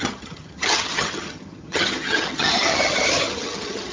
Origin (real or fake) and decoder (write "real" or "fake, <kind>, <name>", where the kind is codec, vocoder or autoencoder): fake, vocoder, HiFi-GAN